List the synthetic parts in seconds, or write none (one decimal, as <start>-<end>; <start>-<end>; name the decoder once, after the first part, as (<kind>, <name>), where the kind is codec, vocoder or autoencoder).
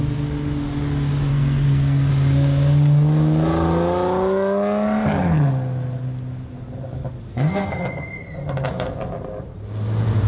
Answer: 1.3-2.1 (codec, SNAC); 7.3-7.8